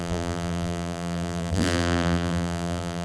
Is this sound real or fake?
fake